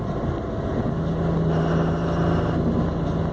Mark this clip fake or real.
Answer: real